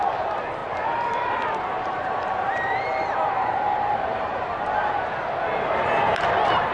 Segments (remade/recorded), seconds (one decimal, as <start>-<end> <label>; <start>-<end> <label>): 0.0-0.6 recorded; 0.6-4.6 remade; 4.6-6.7 recorded